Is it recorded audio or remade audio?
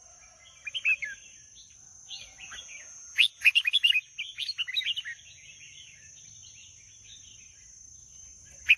recorded